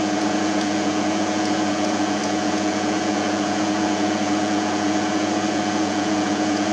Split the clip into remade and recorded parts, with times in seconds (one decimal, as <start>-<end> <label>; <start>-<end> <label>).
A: 0.0-6.7 remade